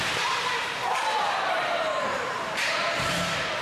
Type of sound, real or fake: fake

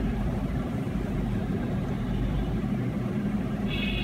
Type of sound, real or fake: fake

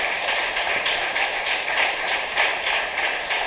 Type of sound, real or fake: fake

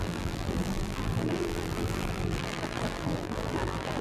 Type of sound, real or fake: fake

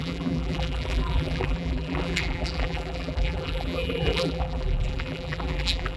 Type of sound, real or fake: fake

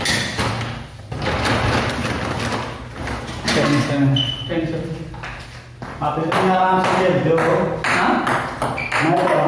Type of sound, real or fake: real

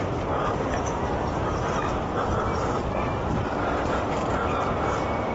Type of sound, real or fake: real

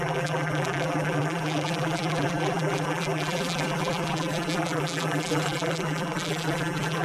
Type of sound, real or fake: fake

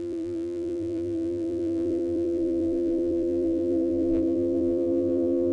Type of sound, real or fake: fake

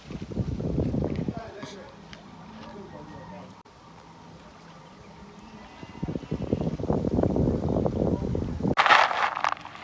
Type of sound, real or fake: real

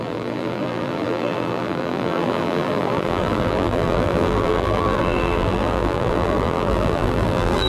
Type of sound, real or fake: fake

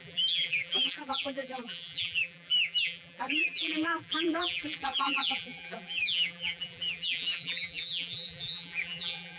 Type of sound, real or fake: fake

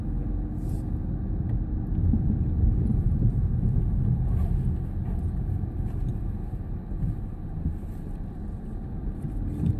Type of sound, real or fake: real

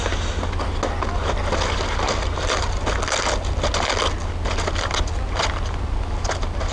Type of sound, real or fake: real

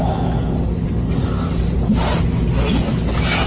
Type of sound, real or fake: real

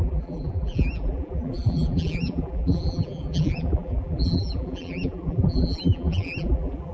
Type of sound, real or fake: fake